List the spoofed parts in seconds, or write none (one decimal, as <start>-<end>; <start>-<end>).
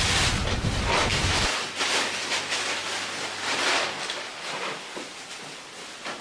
0.0-1.1; 1.7-6.2